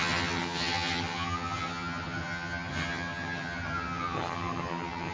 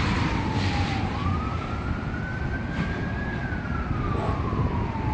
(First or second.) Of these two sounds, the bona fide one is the second